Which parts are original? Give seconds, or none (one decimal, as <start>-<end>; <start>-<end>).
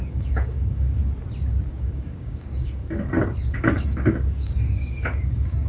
1.0-1.7; 2.8-3.5